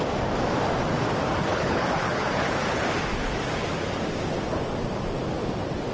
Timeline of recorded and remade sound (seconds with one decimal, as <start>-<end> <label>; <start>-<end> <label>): 0.0-1.5 recorded; 1.5-2.8 remade; 2.8-5.9 recorded